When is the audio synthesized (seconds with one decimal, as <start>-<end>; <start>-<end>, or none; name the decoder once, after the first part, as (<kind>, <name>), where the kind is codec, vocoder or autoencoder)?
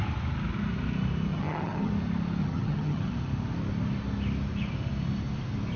1.3-1.9 (vocoder, HiFi-GAN); 2.4-3.1